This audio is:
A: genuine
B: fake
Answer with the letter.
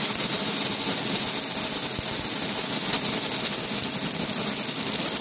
A